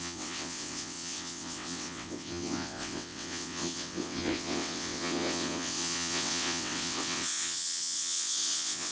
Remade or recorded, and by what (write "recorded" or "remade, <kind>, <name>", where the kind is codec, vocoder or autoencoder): remade, vocoder, WaveNeXt